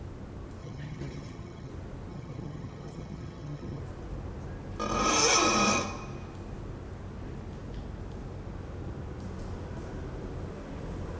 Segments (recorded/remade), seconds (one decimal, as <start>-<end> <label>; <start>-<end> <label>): 0.0-0.6 recorded; 0.6-1.7 remade; 1.7-2.1 recorded; 2.1-3.8 remade; 3.8-11.2 recorded